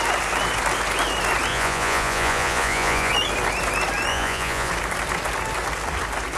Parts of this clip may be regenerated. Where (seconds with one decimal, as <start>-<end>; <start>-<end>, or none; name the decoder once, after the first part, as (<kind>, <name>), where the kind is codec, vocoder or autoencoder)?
1.5-3.1 (vocoder, Vocos); 4.1-4.7